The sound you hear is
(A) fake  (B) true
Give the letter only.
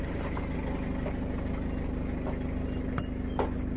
B